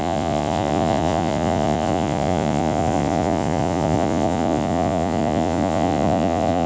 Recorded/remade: remade